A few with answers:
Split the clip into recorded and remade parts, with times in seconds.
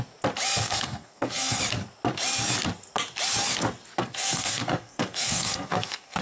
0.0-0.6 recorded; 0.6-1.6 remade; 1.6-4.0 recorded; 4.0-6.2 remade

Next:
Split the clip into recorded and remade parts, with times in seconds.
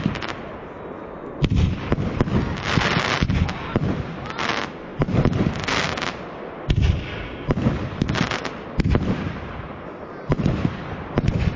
0.0-11.6 recorded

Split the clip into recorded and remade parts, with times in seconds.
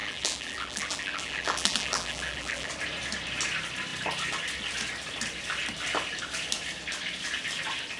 0.0-2.7 remade; 2.7-8.0 recorded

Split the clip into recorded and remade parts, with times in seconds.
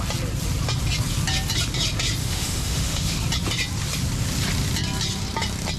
0.0-2.2 recorded; 2.2-3.2 remade; 3.2-5.8 recorded